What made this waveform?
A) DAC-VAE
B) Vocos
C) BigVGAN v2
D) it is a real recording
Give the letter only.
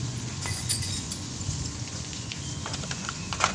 B